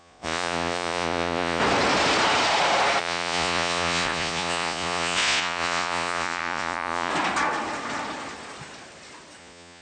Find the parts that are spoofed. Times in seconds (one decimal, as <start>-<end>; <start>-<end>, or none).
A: 0.0-1.6; 3.0-7.1; 9.4-9.8